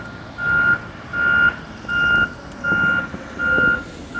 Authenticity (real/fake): real